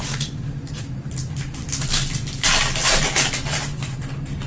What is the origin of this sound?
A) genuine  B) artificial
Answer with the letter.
A